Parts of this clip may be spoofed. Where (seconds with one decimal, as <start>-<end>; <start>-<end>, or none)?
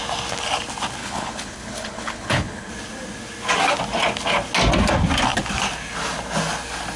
1.0-2.7